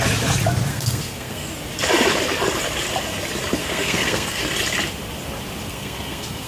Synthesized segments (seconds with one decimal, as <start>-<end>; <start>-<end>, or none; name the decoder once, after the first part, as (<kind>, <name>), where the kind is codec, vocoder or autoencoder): 0.7-1.5 (codec, SNAC); 3.6-4.4; 5.7-6.5